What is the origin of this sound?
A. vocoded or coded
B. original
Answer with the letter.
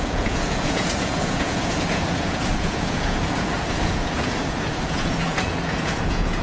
A